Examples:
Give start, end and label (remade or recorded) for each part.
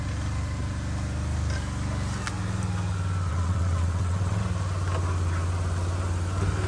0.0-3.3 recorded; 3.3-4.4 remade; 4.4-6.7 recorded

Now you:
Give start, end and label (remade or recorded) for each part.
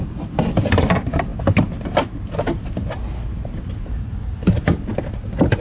0.0-5.6 recorded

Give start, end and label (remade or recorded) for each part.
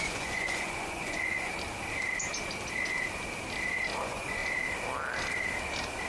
0.0-1.5 remade; 1.5-4.0 recorded; 4.0-4.4 remade; 4.4-6.1 recorded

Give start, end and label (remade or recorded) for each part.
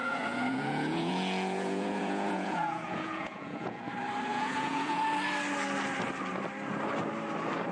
0.0-3.9 remade; 3.9-4.3 recorded; 4.3-5.0 remade; 5.0-7.7 recorded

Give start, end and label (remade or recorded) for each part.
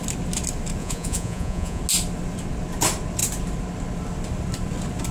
0.0-0.8 recorded; 0.8-1.8 remade; 1.8-5.1 recorded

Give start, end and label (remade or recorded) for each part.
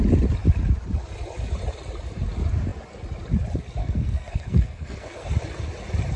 0.0-3.8 recorded; 3.8-5.3 remade; 5.3-6.2 recorded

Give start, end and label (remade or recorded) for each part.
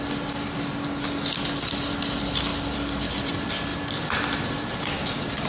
0.0-2.5 recorded; 2.5-3.3 remade; 3.3-3.7 recorded; 3.7-4.7 remade; 4.7-5.5 recorded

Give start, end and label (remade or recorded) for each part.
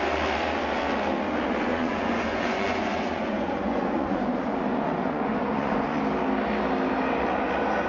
0.0-1.7 recorded; 1.7-6.0 remade; 6.0-7.9 recorded